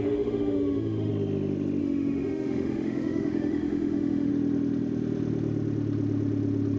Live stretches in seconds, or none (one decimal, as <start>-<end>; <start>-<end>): 1.1-1.8; 4.3-6.8